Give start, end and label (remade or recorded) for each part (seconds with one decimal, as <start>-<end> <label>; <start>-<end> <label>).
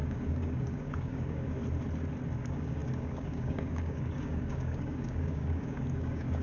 0.0-1.6 remade; 1.6-2.4 recorded; 2.4-6.4 remade